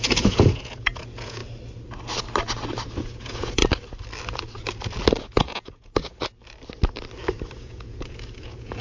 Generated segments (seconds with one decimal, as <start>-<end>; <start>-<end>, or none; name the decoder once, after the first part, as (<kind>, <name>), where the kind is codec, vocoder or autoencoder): 0.0-1.4 (vocoder, Vocos); 3.0-3.6; 5.2-6.1; 7.6-8.8